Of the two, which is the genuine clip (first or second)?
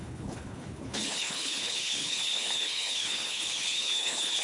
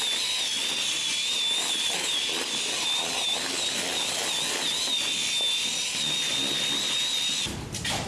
second